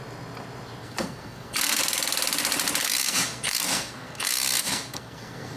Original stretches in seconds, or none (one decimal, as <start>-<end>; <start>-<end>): 0.0-0.8; 1.8-2.8